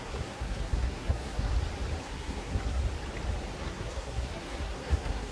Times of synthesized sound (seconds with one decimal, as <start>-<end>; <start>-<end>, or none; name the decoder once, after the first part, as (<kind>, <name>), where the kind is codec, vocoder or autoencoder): 0.0-1.5 (codec, SNAC); 2.0-2.8; 3.6-5.3